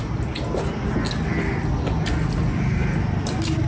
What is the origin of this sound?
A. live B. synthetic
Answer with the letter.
A